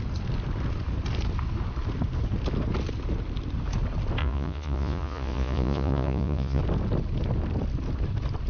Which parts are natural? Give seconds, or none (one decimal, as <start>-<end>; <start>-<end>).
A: 0.0-4.2; 6.6-8.5